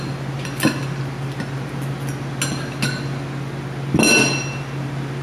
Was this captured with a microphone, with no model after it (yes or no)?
yes